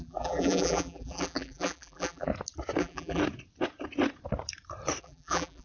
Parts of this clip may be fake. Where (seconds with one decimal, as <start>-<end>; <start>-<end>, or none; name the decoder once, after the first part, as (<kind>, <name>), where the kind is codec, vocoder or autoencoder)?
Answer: 0.0-2.3 (vocoder, BigVGAN v2); 2.8-3.2; 5.0-5.6

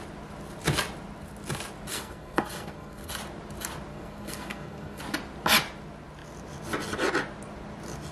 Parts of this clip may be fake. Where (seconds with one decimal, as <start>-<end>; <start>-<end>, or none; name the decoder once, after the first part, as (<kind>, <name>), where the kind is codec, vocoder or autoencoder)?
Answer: 1.9-3.1 (codec, SNAC); 3.9-5.0

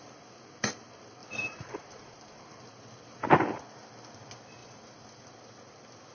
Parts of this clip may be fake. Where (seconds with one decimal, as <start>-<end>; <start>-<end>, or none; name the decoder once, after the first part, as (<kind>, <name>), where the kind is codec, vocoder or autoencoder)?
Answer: 1.2-2.4 (vocoder, BigVGAN v2); 4.6-5.2

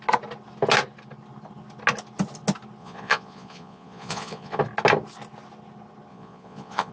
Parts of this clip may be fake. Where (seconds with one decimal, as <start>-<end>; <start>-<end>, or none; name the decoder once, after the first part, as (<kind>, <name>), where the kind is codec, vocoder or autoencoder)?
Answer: 2.8-4.6 (vocoder, Vocos); 6.1-6.9

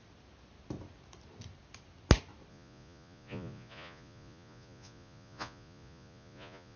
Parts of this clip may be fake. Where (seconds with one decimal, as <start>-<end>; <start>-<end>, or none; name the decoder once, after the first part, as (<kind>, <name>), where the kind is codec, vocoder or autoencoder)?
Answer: 2.5-6.8 (vocoder, Vocos)